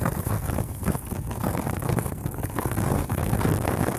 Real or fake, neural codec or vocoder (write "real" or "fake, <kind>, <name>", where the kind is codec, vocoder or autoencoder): fake, codec, SNAC